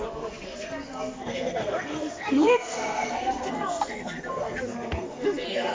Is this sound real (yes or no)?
no